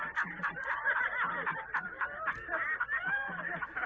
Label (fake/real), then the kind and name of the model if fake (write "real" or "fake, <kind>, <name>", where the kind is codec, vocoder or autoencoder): fake, vocoder, BigVGAN v2